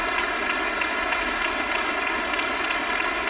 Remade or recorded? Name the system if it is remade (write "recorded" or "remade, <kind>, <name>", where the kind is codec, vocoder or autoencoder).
recorded